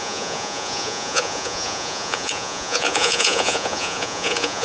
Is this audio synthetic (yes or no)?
yes